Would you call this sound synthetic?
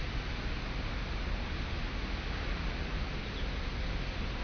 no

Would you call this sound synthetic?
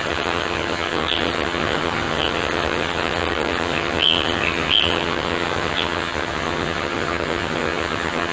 yes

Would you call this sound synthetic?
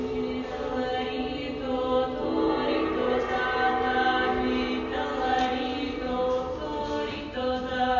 no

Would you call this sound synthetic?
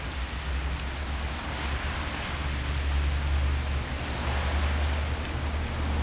no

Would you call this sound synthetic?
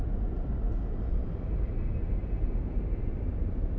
no